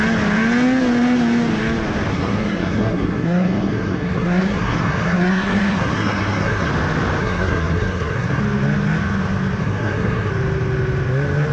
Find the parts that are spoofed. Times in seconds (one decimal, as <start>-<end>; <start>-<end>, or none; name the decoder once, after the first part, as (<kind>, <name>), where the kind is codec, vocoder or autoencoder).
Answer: 2.1-6.7 (codec, SNAC); 7.2-8.4; 9.6-10.3